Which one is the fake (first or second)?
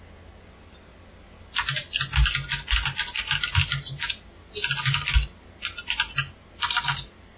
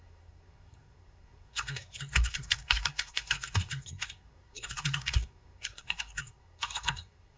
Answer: second